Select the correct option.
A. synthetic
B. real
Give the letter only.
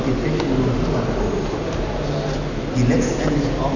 B